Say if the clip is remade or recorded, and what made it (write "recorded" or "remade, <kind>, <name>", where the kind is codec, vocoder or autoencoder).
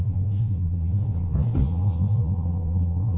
remade, vocoder, Vocos